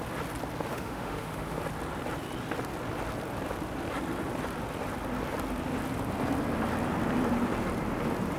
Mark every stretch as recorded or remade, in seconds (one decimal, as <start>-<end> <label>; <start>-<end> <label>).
0.0-0.7 recorded; 0.7-1.6 remade; 1.6-8.4 recorded